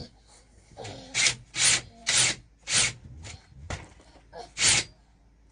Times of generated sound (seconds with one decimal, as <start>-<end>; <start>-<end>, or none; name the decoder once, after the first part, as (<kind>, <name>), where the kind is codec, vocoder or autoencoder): 0.0-0.8 (codec, SNAC)